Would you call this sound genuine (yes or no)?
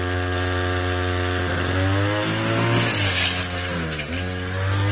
yes